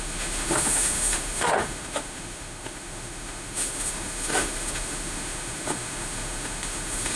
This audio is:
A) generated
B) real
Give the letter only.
A